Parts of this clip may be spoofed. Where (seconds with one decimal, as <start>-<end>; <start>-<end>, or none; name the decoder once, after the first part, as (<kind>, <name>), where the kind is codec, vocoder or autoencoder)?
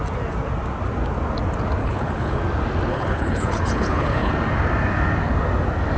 1.8-2.4 (codec, HILCodec); 2.9-4.3